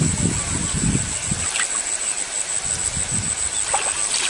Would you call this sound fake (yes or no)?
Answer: no